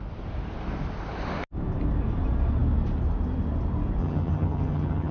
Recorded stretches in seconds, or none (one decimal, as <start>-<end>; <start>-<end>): 0.0-4.0